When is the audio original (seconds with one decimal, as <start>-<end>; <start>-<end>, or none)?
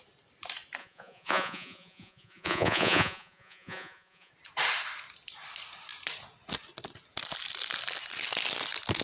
0.0-0.8; 4.3-9.0